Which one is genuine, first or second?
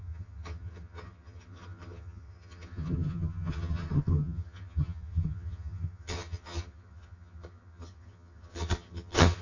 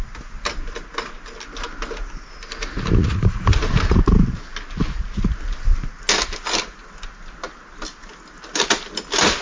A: second